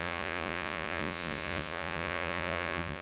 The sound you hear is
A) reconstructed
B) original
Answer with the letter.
A